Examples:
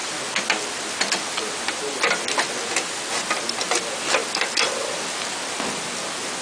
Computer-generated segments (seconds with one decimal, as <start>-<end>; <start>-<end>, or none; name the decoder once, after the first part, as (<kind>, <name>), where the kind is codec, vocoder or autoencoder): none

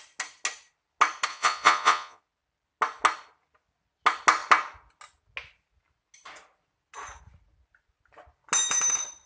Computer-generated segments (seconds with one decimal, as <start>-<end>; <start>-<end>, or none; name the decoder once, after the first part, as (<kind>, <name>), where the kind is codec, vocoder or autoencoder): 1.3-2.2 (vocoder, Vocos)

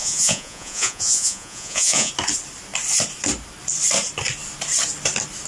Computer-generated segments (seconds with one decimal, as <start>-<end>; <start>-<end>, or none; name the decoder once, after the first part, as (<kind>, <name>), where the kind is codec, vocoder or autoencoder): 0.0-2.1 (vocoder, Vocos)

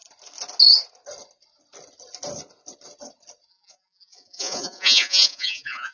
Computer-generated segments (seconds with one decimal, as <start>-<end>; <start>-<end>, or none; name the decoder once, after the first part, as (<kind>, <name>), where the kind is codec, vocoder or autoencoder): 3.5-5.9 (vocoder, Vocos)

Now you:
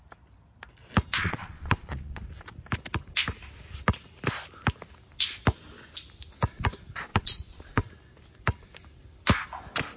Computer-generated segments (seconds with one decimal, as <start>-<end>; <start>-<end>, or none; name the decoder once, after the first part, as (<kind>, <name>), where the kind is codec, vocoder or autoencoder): 1.2-2.2 (vocoder, Vocos); 7.1-7.9